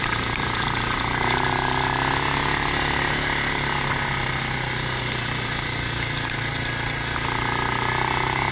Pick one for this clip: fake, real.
real